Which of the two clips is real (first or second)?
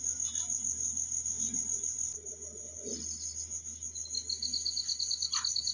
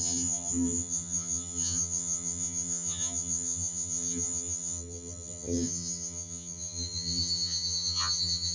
first